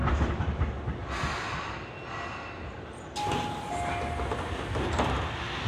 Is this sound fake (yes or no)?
no